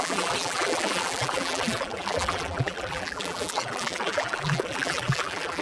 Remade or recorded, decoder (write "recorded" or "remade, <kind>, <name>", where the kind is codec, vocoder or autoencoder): remade, vocoder, BigVGAN v2